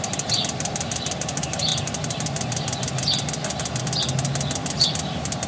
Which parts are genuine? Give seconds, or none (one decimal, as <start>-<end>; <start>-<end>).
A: 0.0-5.5